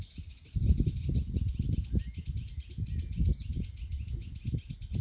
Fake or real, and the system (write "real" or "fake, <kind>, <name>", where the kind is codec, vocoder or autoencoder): real